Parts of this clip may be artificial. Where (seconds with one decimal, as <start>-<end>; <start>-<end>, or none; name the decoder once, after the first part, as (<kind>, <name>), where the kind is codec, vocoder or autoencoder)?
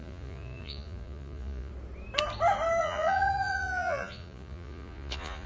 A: 0.0-1.7 (vocoder, Vocos); 2.8-5.5